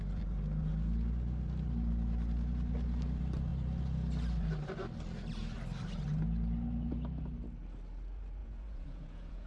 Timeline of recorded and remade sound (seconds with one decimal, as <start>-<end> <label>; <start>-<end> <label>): 0.0-8.4 recorded; 8.4-9.5 remade